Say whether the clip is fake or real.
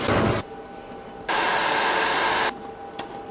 real